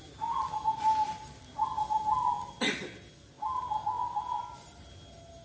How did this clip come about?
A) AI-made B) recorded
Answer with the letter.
B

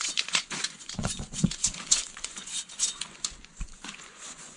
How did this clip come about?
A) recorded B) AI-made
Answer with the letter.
B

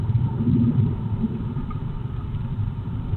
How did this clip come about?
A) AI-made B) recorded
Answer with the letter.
A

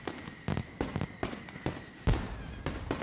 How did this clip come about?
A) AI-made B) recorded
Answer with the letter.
B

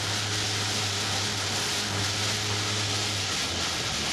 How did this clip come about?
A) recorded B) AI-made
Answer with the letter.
A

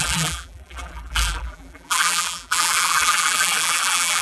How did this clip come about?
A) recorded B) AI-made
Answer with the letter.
B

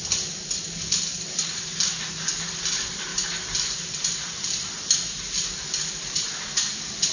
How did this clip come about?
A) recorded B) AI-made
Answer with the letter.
A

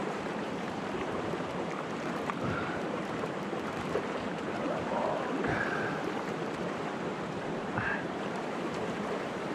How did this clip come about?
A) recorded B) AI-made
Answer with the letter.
B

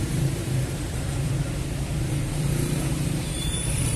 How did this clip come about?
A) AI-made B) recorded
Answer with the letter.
A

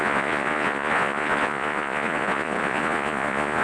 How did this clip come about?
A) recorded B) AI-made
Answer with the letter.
B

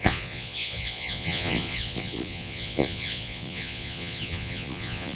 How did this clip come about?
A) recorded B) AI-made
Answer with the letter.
B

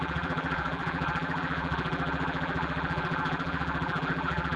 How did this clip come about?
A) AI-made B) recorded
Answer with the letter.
A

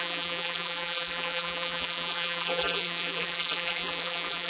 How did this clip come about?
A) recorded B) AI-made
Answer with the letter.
B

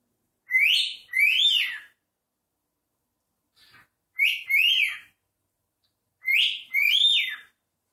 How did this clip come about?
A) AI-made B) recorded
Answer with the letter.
B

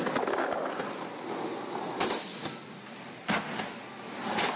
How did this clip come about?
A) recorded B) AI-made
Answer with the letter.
A